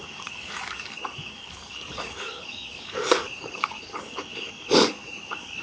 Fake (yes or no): yes